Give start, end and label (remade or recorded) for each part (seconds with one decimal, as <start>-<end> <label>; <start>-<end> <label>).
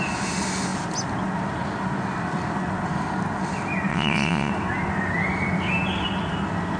0.0-3.9 recorded; 3.9-4.5 remade; 4.5-6.8 recorded